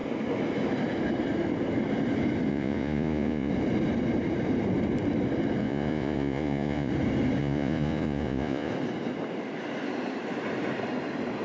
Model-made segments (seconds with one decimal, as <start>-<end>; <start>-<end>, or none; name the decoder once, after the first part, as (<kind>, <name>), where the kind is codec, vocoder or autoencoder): 2.5-3.5 (vocoder, Vocos); 5.6-6.9; 7.4-8.7